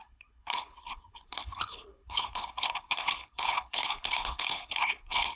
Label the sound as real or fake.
fake